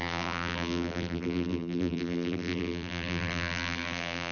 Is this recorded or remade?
remade